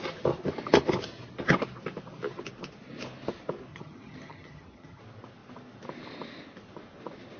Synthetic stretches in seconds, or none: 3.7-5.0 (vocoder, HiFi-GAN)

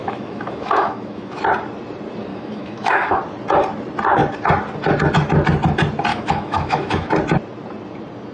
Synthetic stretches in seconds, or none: 0.0-1.4 (autoencoder, DAC-VAE); 2.3-3.2; 6.1-7.1

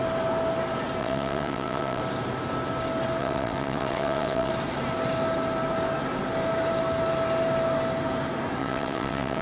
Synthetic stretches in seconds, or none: 1.0-2.0 (vocoder, WaveNeXt); 3.2-4.5; 8.6-9.4

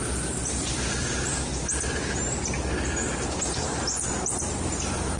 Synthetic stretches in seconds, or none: none